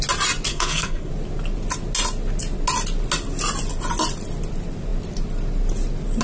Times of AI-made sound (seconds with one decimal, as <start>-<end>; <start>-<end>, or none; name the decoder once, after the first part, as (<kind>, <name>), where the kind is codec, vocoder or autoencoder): 0.5-1.1 (codec, SNAC)